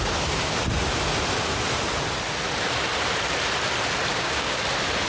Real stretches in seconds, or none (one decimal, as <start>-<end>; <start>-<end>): 0.0-4.1; 4.6-5.1